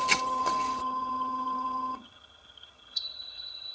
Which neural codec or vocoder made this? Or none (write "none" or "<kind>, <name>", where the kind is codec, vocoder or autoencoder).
vocoder, HiFi-GAN